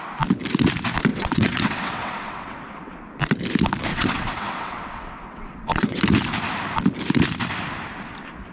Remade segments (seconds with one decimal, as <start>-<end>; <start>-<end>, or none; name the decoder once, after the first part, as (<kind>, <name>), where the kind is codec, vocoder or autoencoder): 1.1-2.9 (vocoder, WaveNeXt); 3.9-6.0